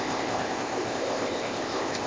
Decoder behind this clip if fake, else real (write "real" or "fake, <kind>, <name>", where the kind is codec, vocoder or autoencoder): fake, codec, ZipCodec